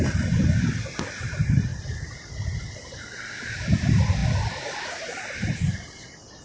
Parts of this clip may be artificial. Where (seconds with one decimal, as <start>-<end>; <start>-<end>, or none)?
1.7-2.7; 4.2-5.5